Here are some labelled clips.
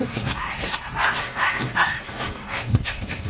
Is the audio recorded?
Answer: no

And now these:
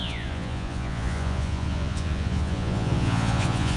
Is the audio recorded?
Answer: no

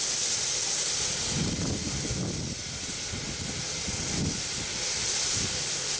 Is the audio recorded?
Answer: yes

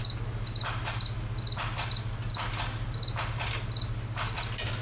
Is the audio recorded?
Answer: yes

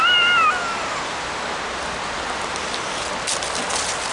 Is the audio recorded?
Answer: yes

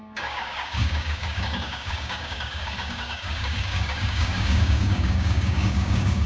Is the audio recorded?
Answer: no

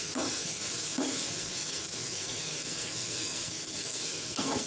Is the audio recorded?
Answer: no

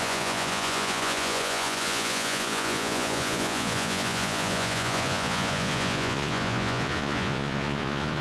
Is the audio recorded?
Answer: no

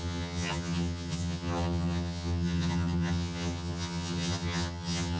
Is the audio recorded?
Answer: no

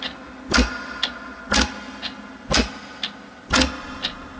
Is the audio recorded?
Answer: yes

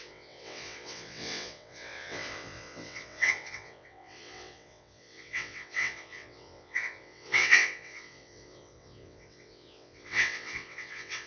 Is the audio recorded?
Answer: no